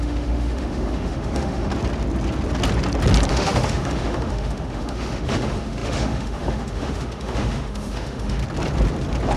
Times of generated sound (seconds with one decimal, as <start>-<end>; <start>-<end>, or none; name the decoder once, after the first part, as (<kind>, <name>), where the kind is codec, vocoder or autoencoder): 0.0-1.7 (autoencoder, DAC-VAE); 3.3-8.4